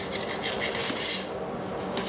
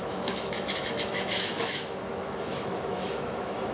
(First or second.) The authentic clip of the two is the first